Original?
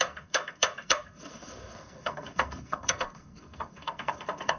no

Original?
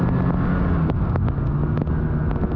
yes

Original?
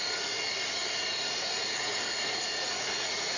no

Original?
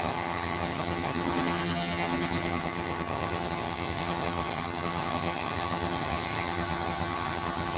no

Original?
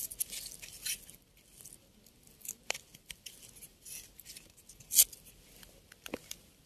yes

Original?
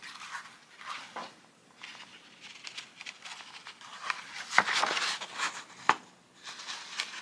yes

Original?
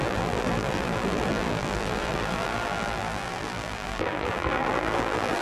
no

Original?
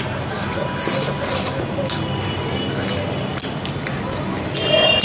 yes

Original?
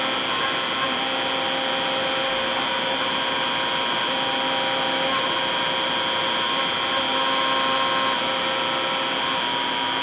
yes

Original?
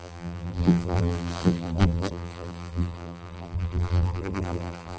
no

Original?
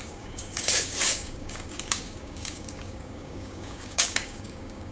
no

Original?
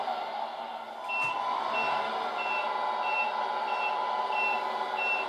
yes